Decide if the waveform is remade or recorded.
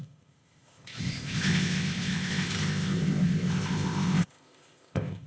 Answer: remade